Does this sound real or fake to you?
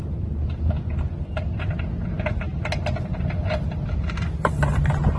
real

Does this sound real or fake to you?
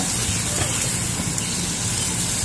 real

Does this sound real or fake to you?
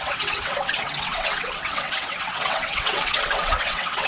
fake